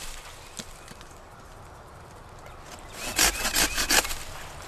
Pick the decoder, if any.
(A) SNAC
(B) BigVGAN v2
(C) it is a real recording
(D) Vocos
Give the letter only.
C